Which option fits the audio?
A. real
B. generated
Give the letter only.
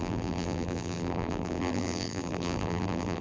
B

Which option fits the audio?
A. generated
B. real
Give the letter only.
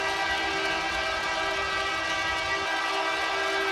B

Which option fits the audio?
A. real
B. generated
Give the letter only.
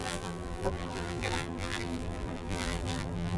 B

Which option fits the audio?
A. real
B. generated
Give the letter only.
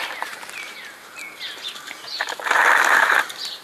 B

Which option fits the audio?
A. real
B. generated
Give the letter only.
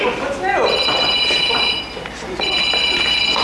A